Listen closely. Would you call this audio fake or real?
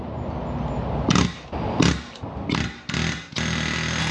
real